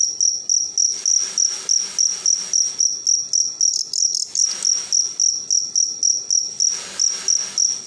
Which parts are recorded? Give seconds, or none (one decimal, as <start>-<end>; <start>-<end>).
0.0-7.9